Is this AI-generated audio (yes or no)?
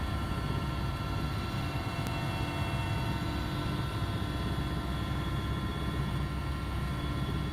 no